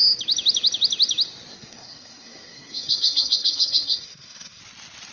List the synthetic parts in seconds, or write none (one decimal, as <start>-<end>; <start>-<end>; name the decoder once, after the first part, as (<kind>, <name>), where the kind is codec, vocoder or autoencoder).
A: 1.5-4.6 (codec, SNAC)